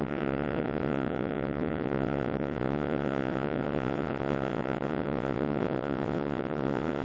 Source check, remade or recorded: remade